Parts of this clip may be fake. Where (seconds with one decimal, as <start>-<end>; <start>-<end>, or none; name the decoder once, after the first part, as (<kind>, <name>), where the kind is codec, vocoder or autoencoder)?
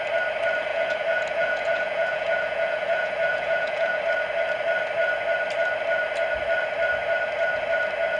0.7-4.0 (vocoder, Vocos)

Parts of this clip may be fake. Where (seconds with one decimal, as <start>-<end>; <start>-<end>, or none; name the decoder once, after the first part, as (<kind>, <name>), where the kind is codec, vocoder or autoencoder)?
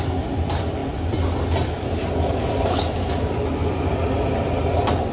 none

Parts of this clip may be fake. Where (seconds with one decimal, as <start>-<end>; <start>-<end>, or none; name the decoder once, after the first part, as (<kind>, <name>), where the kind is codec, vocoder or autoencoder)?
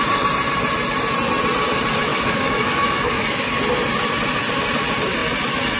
2.1-3.6 (codec, DAC)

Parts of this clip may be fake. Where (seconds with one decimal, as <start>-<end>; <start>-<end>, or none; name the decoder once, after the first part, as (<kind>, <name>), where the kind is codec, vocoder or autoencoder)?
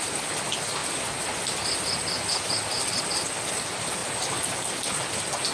none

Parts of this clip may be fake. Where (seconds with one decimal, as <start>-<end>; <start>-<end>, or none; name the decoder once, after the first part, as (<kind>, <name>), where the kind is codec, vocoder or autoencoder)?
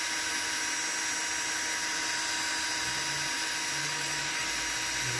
3.8-4.5 (codec, DAC)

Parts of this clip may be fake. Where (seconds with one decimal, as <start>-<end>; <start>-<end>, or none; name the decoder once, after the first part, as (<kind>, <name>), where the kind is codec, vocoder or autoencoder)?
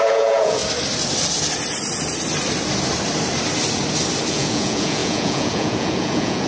0.0-0.6 (vocoder, Vocos); 4.3-6.5